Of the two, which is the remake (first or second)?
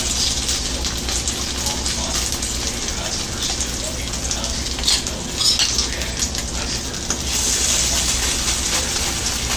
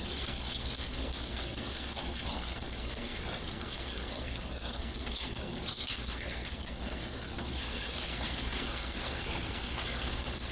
second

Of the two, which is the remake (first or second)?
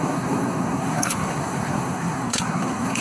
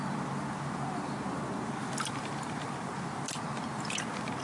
first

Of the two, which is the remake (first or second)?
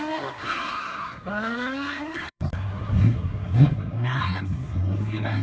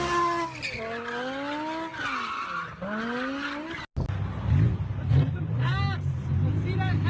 first